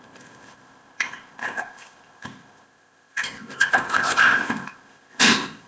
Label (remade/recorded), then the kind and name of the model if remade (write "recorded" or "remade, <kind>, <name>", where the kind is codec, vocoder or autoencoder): remade, codec, ZipCodec